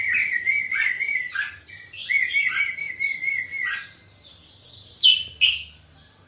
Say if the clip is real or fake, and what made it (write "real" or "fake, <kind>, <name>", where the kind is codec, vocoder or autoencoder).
real